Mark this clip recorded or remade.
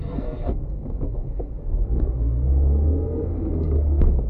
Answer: remade